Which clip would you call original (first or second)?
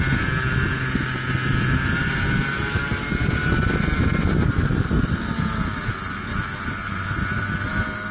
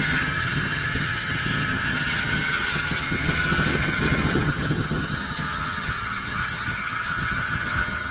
first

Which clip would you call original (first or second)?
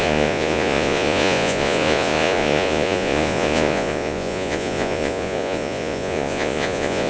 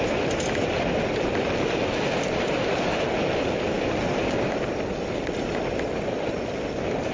second